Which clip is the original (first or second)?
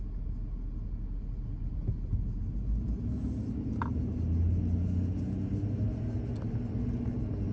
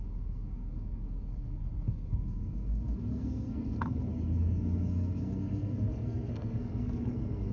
first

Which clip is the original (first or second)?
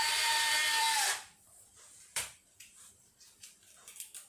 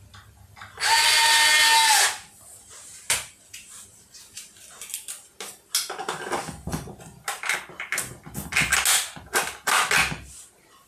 second